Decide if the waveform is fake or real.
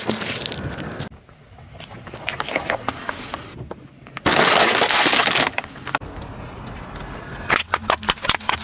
real